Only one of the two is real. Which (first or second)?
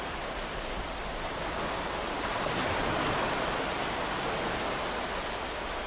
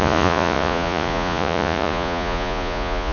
first